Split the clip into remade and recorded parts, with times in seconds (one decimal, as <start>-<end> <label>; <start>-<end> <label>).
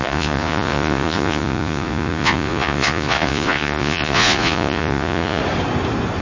0.0-5.4 remade; 5.4-6.2 recorded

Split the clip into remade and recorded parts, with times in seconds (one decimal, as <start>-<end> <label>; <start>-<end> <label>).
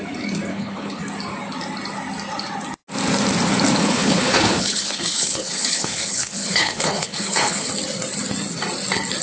0.0-0.5 recorded; 0.5-1.0 remade; 1.0-3.8 recorded; 3.8-7.7 remade; 7.7-9.2 recorded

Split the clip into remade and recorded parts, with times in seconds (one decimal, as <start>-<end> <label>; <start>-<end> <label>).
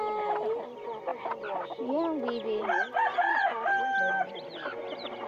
0.0-5.3 recorded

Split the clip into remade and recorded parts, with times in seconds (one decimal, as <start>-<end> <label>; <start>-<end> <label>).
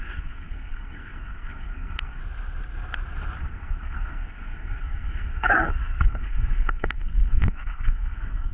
0.0-2.2 remade; 2.2-3.4 recorded; 3.4-8.5 remade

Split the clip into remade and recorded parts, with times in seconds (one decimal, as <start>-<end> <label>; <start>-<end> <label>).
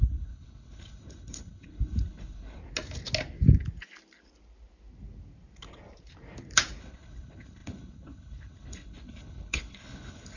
0.0-2.6 remade; 2.6-6.8 recorded; 6.8-10.4 remade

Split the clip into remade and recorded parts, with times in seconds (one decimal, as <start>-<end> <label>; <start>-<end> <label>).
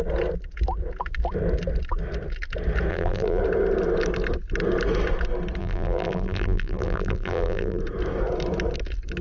0.0-2.9 recorded; 2.9-3.4 remade; 3.4-5.6 recorded; 5.6-7.8 remade; 7.8-9.2 recorded